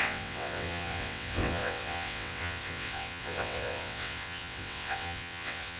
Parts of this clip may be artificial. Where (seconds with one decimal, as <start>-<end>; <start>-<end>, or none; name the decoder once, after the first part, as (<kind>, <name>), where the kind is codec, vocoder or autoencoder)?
0.0-5.8 (vocoder, WaveNeXt)